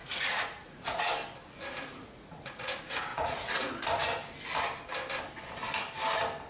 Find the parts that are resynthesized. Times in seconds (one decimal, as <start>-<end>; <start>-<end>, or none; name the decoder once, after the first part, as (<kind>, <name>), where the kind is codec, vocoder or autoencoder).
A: 0.0-1.1 (vocoder, Vocos); 2.0-2.7; 3.1-3.7